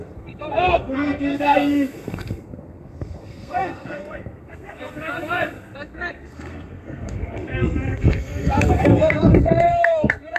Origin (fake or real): fake